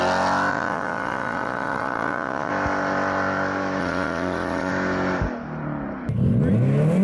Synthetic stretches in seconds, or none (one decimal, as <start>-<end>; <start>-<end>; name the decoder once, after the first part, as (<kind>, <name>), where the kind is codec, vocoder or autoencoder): 0.5-2.5 (vocoder, Vocos); 3.8-4.7